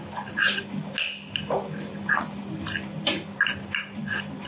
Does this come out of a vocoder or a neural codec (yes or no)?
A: no